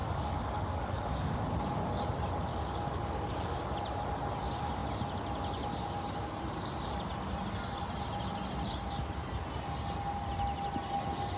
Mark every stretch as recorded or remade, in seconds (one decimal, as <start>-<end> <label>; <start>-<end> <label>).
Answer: 0.0-1.8 remade; 1.8-2.5 recorded; 2.5-3.6 remade; 3.6-11.4 recorded